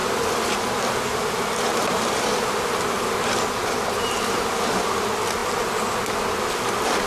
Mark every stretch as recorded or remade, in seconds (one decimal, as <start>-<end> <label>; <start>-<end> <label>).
0.0-7.1 recorded